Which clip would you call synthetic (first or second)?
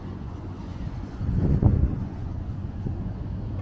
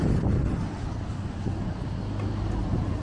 first